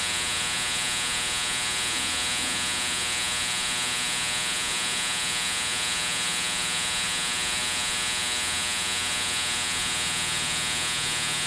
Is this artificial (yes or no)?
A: yes